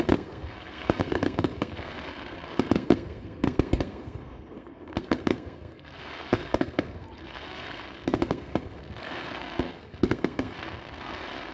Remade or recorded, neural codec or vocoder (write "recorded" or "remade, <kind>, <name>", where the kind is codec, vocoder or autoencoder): remade, codec, SNAC